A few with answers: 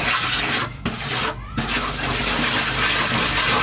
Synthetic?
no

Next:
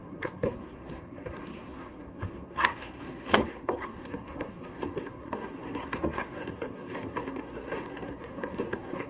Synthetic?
yes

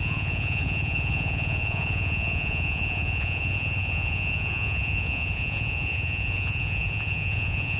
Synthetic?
yes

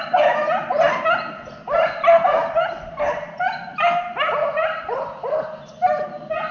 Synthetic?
no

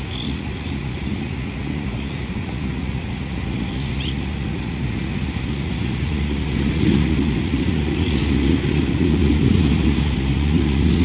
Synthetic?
yes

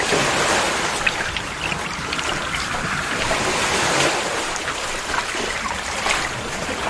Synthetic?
no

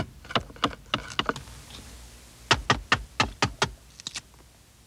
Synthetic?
no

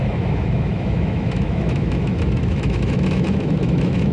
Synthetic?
yes